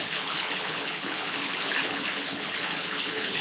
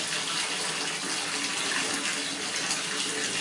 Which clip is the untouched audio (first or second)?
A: second